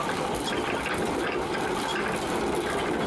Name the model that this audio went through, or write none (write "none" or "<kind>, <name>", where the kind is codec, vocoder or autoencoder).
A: vocoder, BigVGAN v2